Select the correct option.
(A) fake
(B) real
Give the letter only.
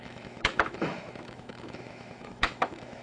A